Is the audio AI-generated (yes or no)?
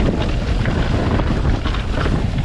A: no